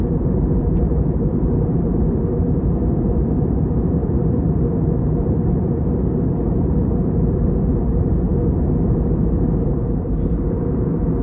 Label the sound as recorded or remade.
remade